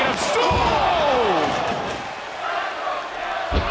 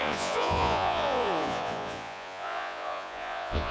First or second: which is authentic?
first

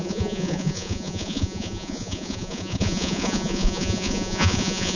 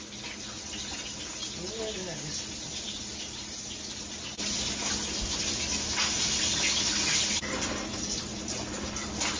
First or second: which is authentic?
second